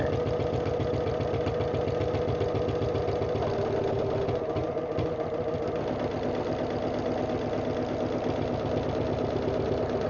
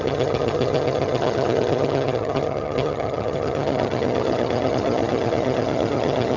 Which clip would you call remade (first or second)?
second